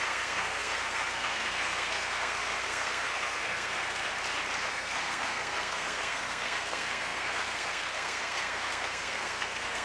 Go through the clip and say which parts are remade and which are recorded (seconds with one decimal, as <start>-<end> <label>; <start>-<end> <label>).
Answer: 0.0-4.1 remade; 4.1-4.7 recorded; 4.7-9.8 remade